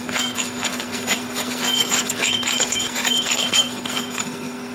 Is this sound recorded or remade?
remade